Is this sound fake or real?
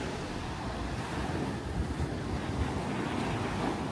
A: real